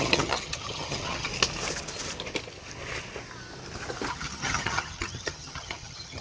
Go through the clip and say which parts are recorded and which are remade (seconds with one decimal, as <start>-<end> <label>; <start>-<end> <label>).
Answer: 0.0-1.3 remade; 1.3-4.1 recorded; 4.1-6.2 remade